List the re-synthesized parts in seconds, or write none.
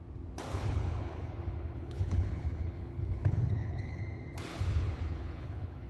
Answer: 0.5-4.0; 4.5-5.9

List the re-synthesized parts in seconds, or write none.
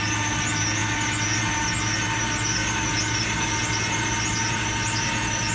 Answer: none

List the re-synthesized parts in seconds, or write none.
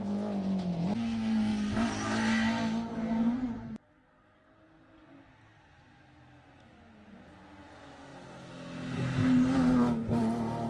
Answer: none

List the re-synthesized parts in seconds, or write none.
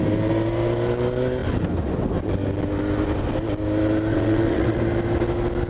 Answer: 4.1-4.8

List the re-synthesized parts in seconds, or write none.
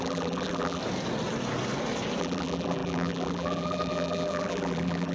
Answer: 0.0-0.8; 2.2-5.1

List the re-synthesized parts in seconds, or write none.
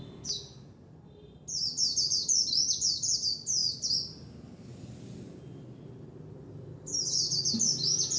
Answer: none